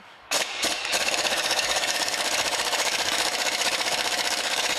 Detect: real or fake fake